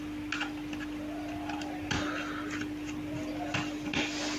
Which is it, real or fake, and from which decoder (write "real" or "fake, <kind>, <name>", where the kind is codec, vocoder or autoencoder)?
real